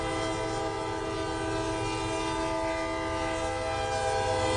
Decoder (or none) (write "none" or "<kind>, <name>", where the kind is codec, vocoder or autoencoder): none